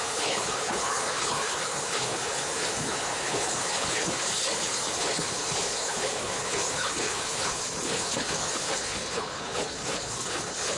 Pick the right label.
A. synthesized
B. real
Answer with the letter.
A